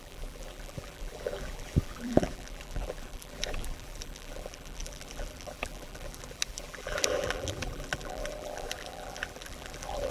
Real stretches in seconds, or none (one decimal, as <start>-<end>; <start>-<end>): none